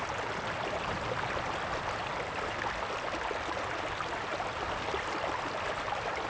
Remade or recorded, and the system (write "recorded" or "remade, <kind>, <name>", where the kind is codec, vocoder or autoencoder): recorded